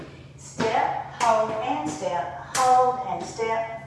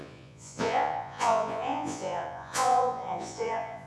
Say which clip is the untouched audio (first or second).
first